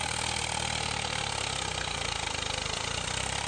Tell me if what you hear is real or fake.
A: fake